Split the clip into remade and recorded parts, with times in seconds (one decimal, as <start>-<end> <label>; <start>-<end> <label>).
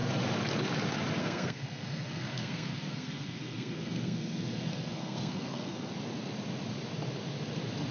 0.0-1.2 recorded; 1.2-5.9 remade; 5.9-7.9 recorded